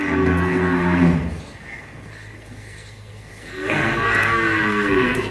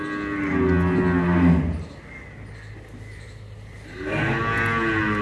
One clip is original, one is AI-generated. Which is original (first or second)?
second